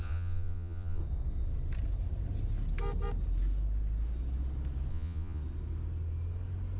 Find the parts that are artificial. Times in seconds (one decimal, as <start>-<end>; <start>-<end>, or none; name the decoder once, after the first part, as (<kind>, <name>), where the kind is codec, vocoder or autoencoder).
0.0-1.0 (vocoder, Vocos); 4.9-5.4